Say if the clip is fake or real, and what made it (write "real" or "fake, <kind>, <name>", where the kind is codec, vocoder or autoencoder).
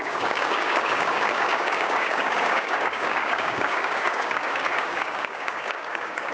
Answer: fake, codec, DAC